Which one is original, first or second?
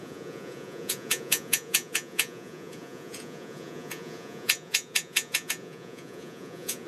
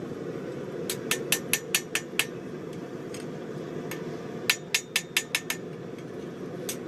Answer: second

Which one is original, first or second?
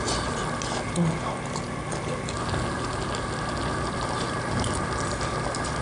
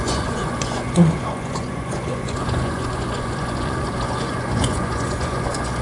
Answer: first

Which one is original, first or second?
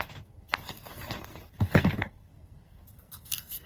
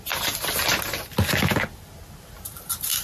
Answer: second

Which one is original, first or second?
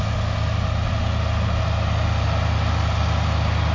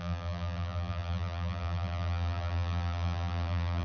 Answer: first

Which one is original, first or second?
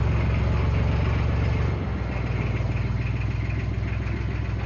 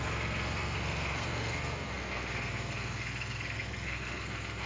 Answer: first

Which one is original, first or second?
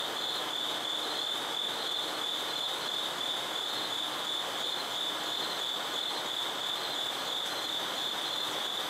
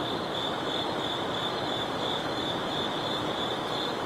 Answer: first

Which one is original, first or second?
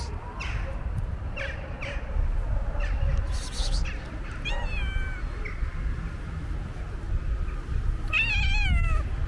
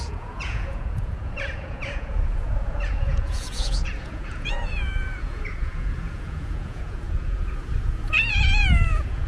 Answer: first